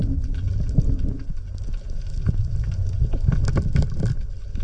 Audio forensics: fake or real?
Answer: real